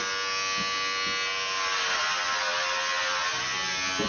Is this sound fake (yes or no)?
no